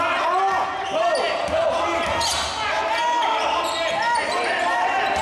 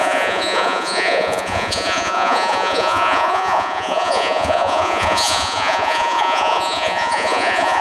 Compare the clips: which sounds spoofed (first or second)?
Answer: second